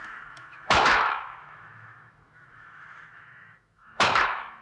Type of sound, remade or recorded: remade